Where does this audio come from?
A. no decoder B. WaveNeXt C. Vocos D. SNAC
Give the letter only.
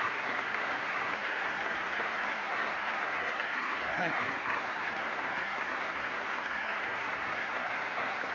D